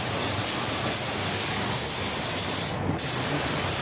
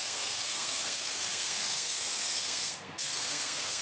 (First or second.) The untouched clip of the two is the first